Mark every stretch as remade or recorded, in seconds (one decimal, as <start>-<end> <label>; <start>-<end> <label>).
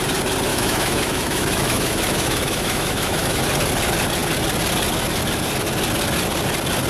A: 0.0-0.5 recorded; 0.5-3.4 remade; 3.4-6.9 recorded